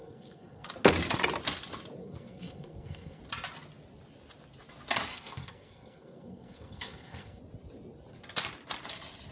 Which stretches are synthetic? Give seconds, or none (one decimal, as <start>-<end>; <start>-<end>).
0.0-0.7; 2.0-3.2; 5.1-7.4